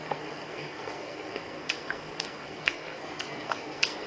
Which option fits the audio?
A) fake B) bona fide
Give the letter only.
A